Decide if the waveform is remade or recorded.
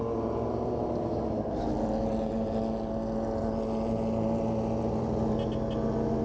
recorded